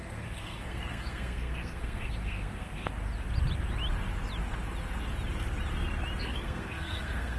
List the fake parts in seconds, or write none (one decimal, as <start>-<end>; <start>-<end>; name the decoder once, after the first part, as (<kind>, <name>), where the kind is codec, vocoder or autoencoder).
0.0-2.8 (codec, SNAC); 6.2-7.4